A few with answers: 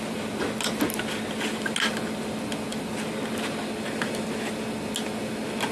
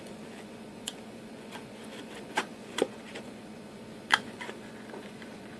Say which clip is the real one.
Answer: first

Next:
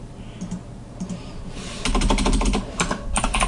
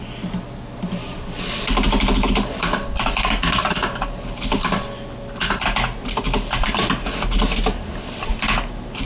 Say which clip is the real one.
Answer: second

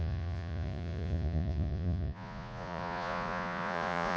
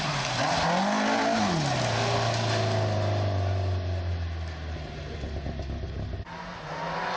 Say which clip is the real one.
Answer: second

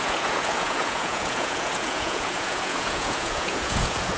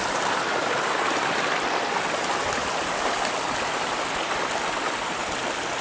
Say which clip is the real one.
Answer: second